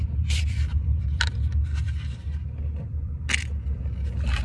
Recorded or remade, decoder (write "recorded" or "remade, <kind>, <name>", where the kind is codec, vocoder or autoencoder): recorded